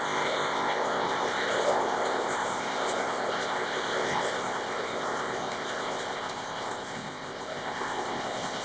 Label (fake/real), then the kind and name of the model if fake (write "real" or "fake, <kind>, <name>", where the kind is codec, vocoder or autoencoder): fake, codec, ZipCodec